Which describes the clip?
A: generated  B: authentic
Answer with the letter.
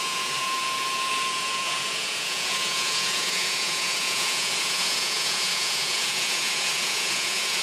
A